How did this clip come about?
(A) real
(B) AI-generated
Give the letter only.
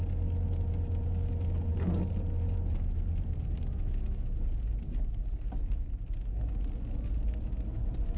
A